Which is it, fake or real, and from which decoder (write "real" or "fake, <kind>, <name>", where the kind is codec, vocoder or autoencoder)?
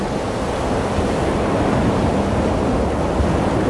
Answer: real